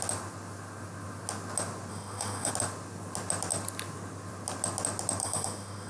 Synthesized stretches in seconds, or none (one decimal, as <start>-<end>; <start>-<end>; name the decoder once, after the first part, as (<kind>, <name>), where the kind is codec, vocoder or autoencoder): 1.9-2.5 (autoencoder, DAC-VAE); 5.2-5.9